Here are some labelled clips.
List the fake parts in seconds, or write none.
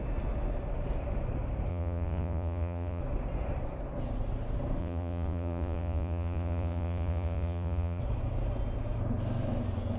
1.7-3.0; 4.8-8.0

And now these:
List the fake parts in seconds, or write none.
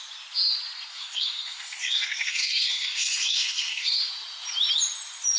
0.9-4.1